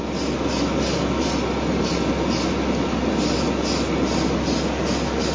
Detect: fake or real real